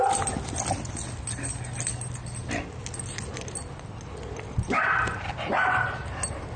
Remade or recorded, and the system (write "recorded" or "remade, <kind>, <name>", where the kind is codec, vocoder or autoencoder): recorded